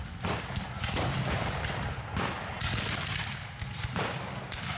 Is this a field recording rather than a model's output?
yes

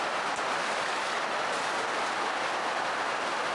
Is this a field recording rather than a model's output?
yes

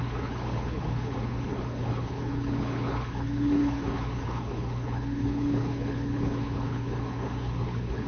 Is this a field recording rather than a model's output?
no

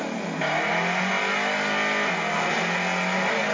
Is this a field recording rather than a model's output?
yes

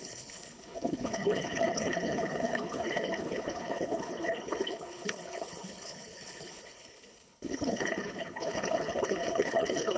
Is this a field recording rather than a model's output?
no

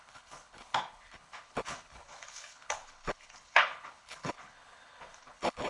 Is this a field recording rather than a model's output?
no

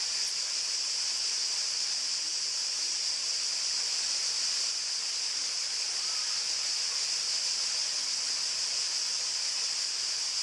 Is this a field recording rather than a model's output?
yes